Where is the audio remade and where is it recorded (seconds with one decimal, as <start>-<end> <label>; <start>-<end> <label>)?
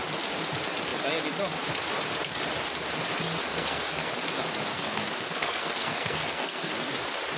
0.0-3.5 recorded; 3.5-4.1 remade; 4.1-4.7 recorded; 4.7-6.7 remade; 6.7-7.4 recorded